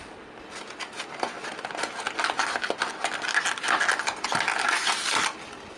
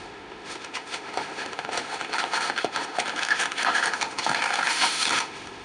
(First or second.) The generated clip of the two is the second